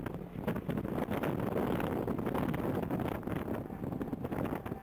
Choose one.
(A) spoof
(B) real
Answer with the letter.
B